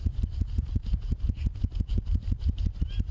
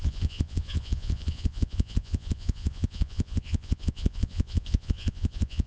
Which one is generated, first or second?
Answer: second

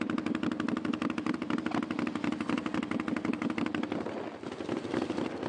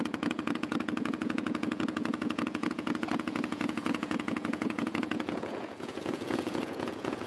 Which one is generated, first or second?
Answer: second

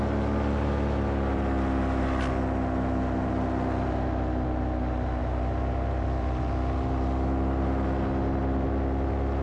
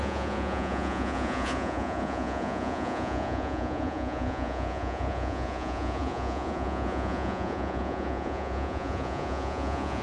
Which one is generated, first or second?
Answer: second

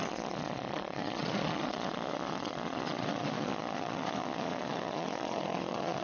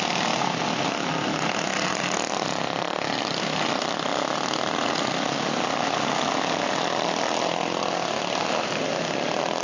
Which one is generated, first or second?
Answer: first